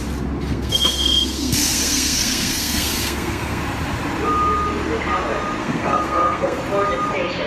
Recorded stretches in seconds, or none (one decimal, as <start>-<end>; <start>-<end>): 0.0-0.5; 3.6-5.6; 6.6-7.5